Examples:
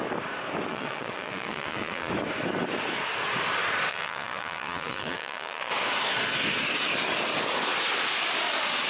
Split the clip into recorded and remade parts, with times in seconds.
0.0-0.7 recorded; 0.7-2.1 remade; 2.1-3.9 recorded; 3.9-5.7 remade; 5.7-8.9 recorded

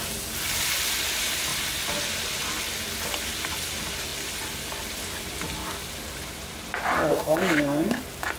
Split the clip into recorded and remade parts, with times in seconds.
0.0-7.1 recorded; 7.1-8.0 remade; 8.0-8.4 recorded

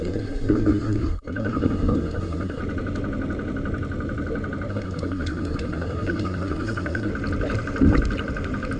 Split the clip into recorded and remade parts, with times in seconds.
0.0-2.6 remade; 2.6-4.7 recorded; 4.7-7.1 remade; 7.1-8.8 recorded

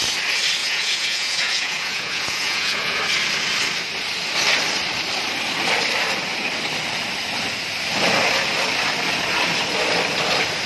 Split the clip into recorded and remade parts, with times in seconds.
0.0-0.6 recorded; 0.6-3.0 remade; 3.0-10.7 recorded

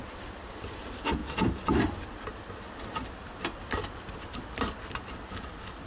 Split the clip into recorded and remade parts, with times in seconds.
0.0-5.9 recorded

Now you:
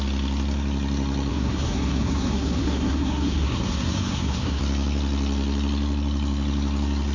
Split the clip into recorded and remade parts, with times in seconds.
0.0-1.3 recorded; 1.3-4.6 remade; 4.6-7.1 recorded

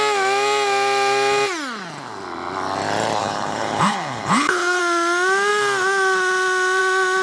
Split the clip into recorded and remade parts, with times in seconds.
0.0-3.2 recorded; 3.2-4.8 remade; 4.8-7.2 recorded

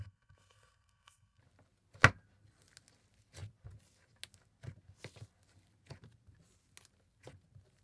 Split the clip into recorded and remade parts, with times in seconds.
0.0-1.4 remade; 1.4-7.8 recorded